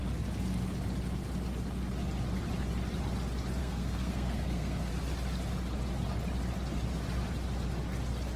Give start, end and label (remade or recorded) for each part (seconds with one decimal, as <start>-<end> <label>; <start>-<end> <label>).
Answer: 0.0-3.6 recorded; 3.6-4.9 remade; 4.9-8.4 recorded